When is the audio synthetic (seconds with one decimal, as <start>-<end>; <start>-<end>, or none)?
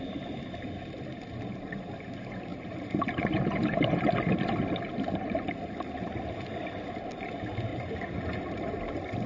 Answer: 2.5-4.1; 7.7-8.6